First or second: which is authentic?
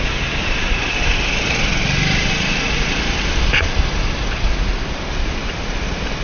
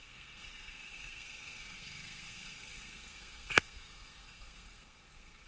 first